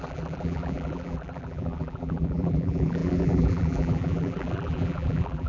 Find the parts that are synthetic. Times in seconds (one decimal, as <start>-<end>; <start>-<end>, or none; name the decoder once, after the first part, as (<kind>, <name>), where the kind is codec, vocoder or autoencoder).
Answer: 0.0-5.5 (vocoder, BigVGAN v2)